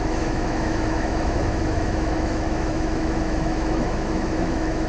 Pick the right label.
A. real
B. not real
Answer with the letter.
B